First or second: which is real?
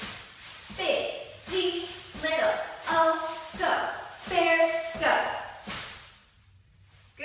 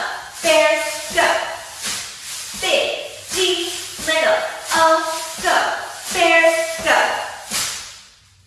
second